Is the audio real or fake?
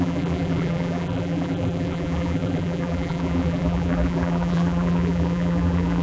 fake